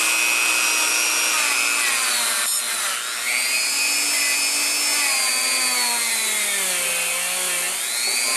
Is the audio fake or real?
real